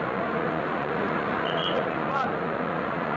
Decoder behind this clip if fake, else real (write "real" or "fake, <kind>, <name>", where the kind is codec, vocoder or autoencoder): fake, vocoder, Vocos